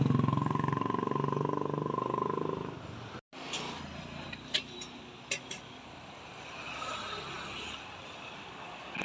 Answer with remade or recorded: recorded